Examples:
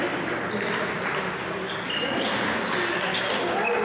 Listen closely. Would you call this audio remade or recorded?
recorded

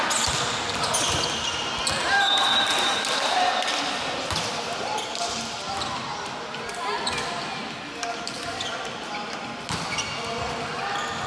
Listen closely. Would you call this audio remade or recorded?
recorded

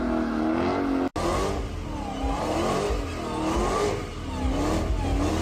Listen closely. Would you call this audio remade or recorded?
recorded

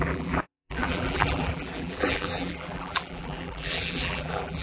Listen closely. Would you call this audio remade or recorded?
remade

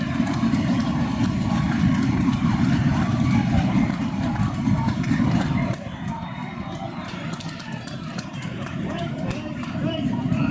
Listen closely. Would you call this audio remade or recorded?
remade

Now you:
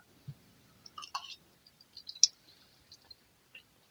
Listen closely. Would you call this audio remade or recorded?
recorded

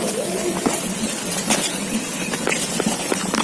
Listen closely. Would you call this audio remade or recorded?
recorded